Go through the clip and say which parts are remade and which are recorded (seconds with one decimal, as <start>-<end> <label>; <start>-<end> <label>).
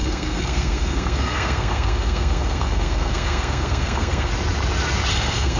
0.0-4.3 remade; 4.3-5.1 recorded; 5.1-5.6 remade